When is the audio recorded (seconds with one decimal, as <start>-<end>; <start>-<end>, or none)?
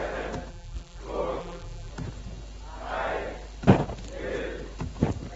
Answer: 0.0-0.5; 1.0-1.4; 1.9-5.4